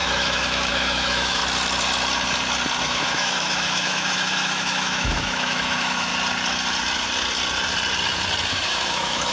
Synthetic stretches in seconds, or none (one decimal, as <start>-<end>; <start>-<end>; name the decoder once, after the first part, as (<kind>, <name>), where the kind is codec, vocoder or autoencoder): 0.0-1.4 (autoencoder, DAC-VAE); 2.8-6.1; 8.5-9.3

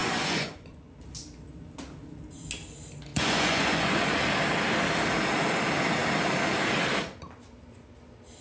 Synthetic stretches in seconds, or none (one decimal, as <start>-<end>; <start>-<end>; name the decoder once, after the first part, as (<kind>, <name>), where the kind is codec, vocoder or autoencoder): 0.0-0.9 (vocoder, Vocos); 3.1-4.1

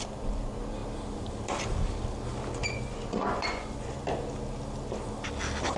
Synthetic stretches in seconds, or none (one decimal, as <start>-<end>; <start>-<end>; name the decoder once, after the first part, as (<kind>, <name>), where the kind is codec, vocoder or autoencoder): 2.6-3.9 (vocoder, Vocos)

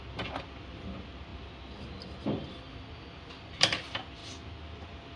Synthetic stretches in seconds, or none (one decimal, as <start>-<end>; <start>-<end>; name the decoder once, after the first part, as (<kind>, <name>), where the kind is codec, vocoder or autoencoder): none

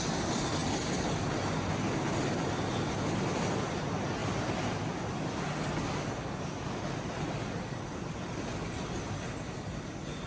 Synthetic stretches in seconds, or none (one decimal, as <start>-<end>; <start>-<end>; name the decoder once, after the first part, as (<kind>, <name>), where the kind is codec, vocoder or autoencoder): none